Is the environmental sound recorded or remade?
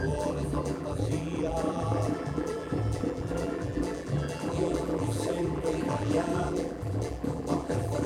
remade